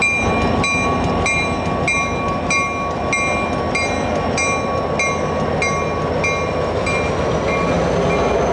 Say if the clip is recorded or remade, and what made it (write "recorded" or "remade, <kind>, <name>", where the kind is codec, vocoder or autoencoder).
recorded